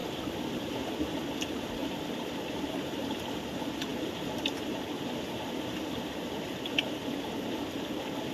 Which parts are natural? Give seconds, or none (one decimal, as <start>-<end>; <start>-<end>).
0.0-1.8; 3.0-3.9; 6.9-8.3